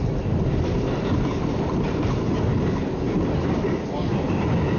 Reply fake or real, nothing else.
real